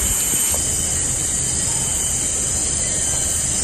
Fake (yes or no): no